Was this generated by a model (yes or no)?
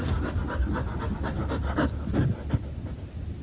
no